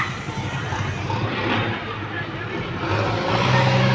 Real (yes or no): yes